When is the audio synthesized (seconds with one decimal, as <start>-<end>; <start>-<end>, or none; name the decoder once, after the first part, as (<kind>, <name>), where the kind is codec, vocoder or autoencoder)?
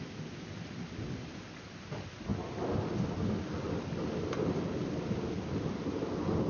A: none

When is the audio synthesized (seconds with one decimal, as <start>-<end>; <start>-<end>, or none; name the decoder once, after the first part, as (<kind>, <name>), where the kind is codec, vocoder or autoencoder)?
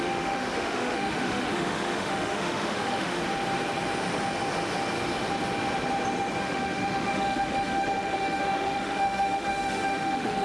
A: 0.0-3.2 (autoencoder, DAC-VAE); 6.4-10.4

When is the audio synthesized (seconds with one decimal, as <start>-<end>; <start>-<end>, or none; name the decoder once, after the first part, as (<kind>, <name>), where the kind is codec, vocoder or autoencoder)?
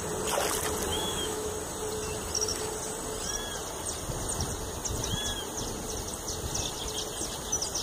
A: 0.9-1.5 (autoencoder, DAC-VAE)